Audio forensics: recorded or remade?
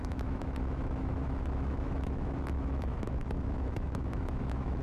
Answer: remade